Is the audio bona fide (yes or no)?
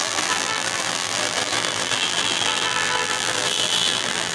no